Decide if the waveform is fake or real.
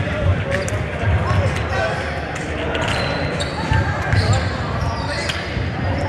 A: fake